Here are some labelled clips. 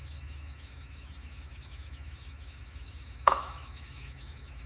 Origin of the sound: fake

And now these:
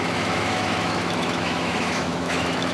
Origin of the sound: fake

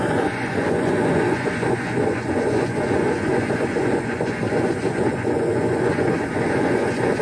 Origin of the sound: fake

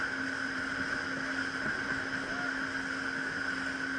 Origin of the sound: real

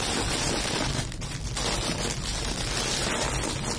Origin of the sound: real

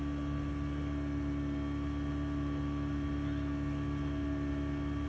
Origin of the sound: real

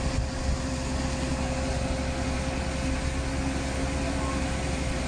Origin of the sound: real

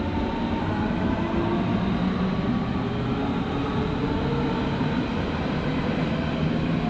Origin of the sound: real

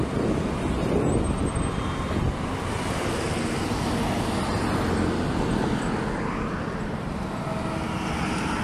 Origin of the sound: real